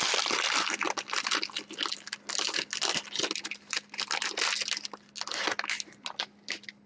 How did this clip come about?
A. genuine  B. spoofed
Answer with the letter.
A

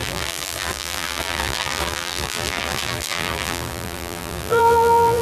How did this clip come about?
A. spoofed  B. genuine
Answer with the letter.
A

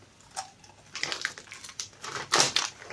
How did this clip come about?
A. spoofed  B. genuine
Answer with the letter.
B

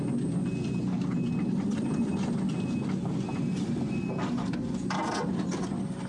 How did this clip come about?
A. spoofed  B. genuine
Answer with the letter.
B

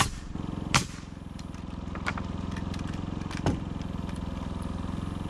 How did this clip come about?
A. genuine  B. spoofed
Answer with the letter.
A